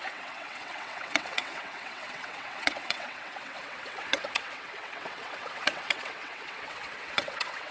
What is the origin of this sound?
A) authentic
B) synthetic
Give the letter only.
B